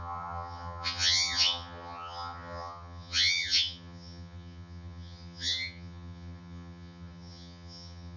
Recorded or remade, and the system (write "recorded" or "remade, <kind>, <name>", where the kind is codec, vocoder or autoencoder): remade, vocoder, HiFi-GAN